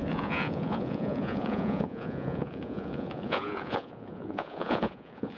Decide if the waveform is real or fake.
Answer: fake